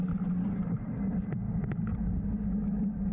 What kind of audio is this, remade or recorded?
recorded